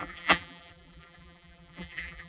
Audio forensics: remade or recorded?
remade